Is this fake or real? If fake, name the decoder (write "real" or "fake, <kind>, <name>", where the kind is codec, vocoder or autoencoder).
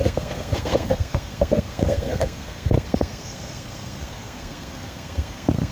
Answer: fake, codec, SNAC